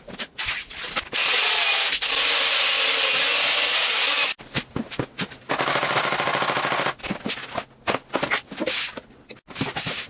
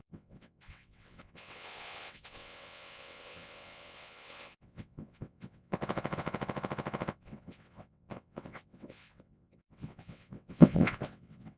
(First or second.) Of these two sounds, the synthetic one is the second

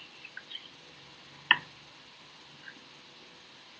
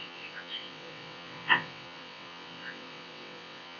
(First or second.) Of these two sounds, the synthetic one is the second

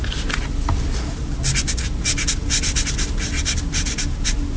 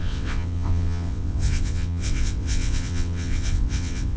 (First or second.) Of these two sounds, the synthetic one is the second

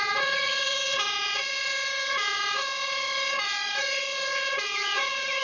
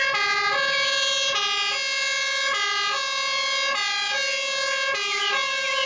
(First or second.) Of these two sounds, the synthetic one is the first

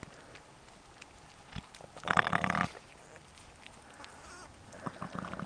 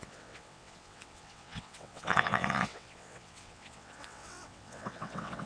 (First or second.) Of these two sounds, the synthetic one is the second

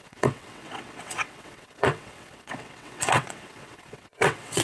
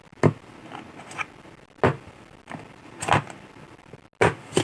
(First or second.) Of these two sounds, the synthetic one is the first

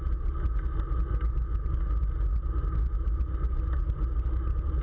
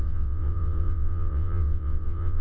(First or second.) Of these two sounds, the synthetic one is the second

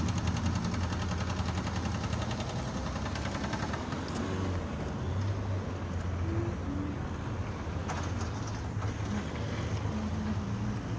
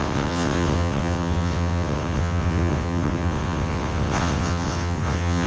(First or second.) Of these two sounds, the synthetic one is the second